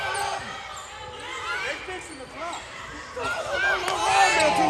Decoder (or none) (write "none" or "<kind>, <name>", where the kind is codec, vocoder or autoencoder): none